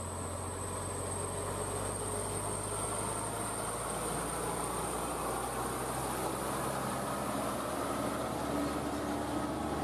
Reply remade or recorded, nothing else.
recorded